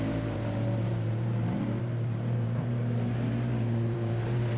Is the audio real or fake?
fake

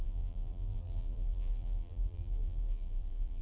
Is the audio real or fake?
fake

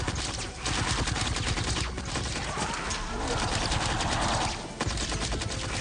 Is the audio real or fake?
real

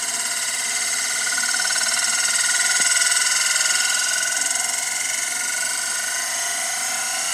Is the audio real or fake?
real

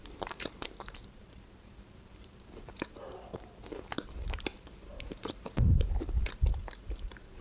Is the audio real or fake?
fake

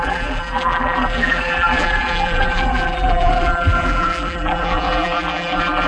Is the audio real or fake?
fake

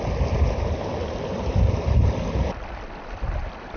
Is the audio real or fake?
real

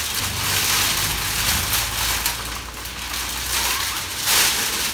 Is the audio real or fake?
real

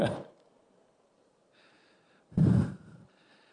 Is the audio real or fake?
fake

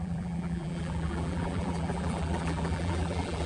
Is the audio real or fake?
fake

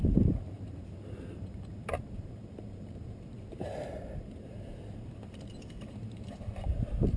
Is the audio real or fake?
fake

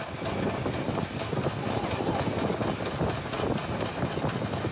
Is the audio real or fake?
real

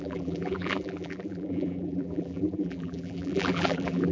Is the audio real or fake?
fake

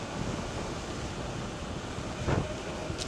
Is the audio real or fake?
real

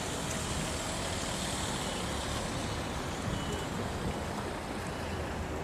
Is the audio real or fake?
real